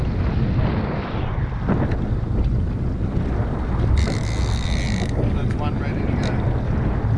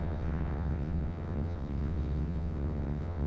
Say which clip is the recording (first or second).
first